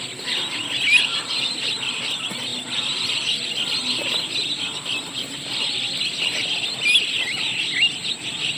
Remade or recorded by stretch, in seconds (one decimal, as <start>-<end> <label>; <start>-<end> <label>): 0.0-8.6 recorded